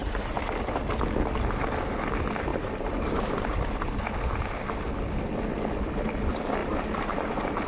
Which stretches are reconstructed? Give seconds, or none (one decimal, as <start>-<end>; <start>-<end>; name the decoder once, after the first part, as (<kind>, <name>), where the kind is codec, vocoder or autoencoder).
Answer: 0.0-0.8 (vocoder, BigVGAN v2); 2.5-4.0; 6.6-7.3